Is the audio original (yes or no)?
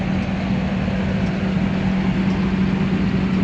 yes